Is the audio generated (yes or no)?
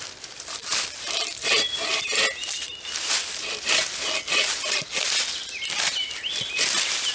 no